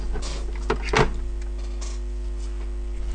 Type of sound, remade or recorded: recorded